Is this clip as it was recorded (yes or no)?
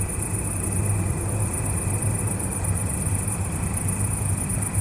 yes